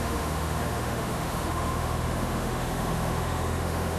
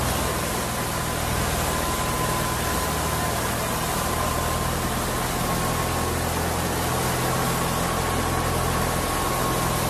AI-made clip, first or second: first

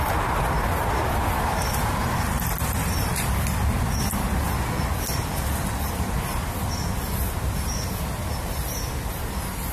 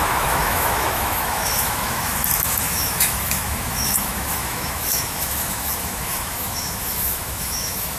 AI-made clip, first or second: second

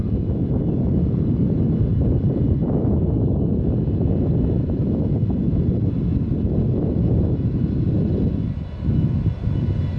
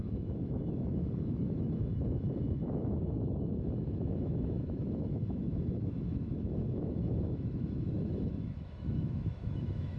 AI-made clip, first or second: second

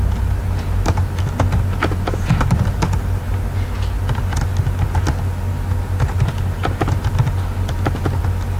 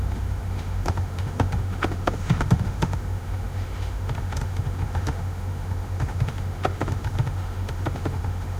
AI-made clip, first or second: second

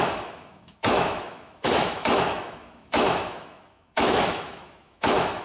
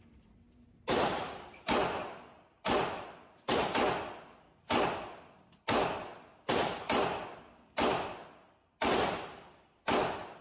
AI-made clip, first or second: first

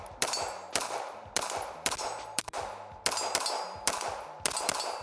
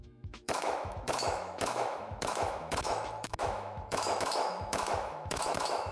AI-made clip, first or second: second